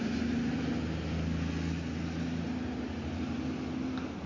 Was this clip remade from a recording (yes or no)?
no